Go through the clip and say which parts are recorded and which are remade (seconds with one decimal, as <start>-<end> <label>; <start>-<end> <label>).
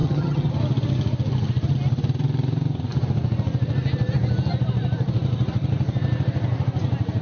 0.0-0.5 remade; 0.5-7.2 recorded